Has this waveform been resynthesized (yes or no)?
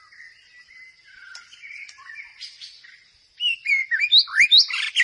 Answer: no